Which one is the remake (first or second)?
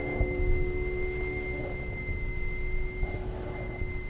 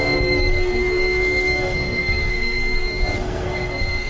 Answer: second